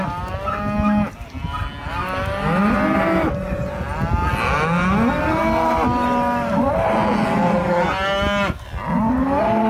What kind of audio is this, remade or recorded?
recorded